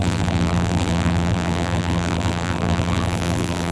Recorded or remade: remade